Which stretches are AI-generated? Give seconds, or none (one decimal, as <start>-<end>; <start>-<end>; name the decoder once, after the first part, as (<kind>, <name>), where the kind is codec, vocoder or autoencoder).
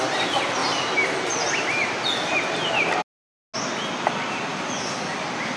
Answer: none